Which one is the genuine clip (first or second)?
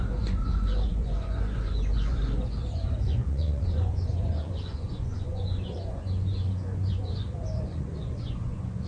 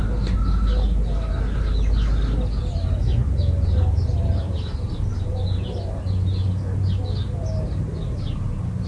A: second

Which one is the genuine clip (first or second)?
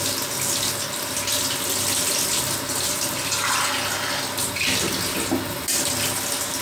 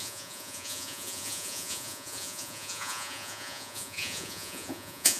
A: first